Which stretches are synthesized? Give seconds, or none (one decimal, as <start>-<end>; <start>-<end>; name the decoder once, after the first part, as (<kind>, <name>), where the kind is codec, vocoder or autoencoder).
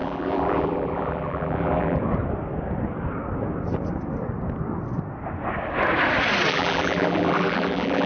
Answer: 0.0-2.0 (vocoder, BigVGAN v2); 6.5-8.1